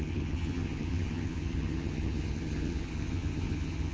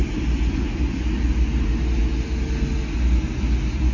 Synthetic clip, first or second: first